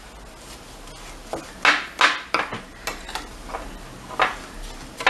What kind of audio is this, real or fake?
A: real